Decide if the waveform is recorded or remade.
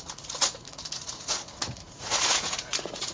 remade